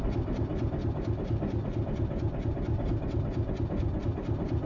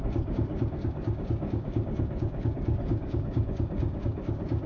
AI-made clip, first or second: second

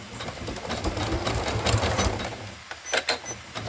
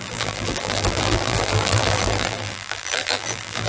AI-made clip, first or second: second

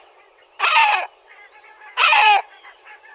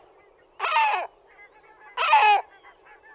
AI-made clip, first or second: first